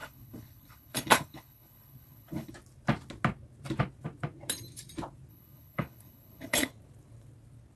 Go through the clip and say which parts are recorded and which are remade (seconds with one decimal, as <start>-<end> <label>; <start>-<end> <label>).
0.0-2.5 remade; 2.5-5.3 recorded; 5.3-6.7 remade; 6.7-7.8 recorded